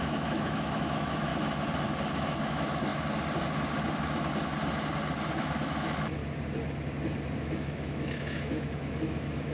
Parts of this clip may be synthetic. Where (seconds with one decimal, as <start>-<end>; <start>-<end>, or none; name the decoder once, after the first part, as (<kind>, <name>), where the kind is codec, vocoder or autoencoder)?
0.0-1.3 (autoencoder, DAC-VAE); 2.1-2.9; 5.3-6.2; 7.4-9.5